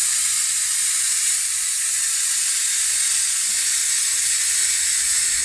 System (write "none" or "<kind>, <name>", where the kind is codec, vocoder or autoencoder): none